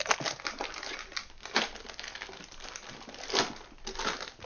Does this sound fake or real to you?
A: real